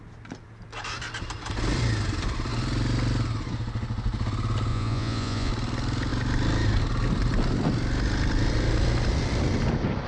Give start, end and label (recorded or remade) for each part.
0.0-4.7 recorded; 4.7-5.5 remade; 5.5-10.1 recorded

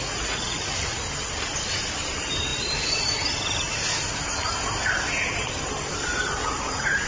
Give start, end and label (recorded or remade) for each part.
0.0-0.8 remade; 0.8-7.1 recorded

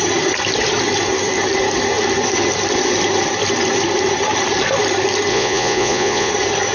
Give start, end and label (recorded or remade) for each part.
0.0-5.3 recorded; 5.3-6.3 remade; 6.3-6.7 recorded

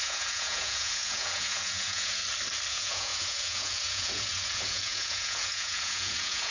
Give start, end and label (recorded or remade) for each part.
0.0-2.2 remade; 2.2-2.7 recorded; 2.7-6.5 remade

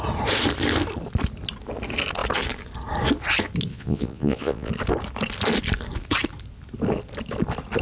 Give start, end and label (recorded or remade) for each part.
0.0-3.7 recorded; 3.7-4.7 remade; 4.7-7.8 recorded

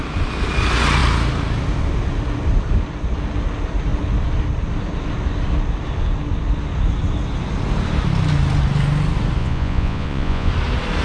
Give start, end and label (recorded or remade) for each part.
0.0-9.4 recorded; 9.4-10.5 remade; 10.5-11.0 recorded

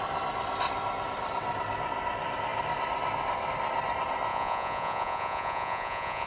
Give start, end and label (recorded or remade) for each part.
0.0-4.3 recorded; 4.3-6.3 remade